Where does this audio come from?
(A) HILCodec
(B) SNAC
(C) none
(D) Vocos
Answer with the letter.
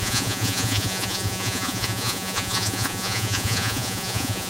D